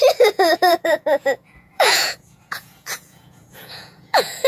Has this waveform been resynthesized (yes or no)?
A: yes